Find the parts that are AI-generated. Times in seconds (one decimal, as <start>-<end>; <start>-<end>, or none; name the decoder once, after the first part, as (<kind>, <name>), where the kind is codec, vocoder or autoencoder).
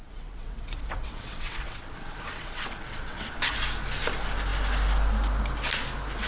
0.0-3.3 (vocoder, WaveNeXt)